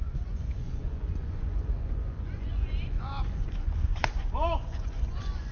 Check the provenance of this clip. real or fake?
fake